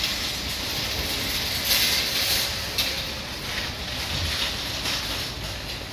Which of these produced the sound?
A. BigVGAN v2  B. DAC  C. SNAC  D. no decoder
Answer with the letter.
D